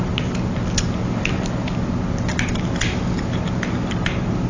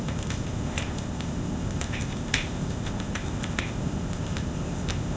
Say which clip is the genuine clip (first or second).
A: first